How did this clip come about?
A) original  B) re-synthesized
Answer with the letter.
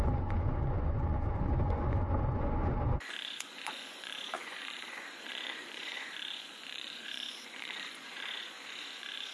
B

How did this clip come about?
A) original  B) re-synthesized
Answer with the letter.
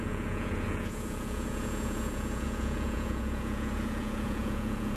B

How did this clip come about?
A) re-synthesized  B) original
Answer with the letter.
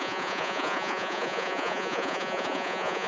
A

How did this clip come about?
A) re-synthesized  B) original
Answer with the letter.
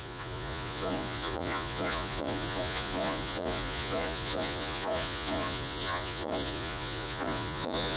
A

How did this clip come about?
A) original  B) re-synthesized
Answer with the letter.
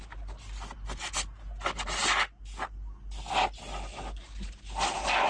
A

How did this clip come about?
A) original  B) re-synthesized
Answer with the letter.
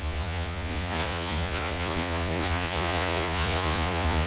B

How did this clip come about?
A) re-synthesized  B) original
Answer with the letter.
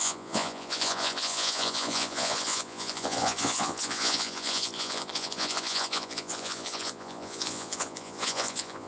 A